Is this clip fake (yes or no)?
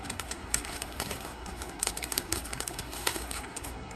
yes